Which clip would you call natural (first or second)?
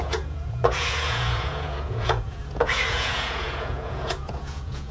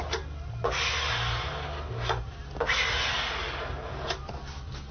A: second